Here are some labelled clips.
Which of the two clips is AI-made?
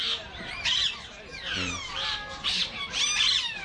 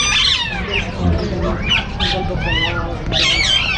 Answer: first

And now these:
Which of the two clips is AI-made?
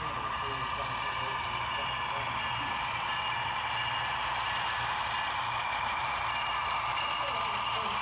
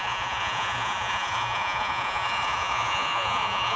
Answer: second